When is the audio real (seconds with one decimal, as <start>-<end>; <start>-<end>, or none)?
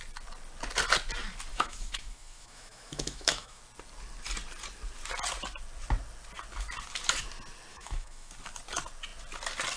0.0-1.5; 3.6-7.7; 8.3-9.8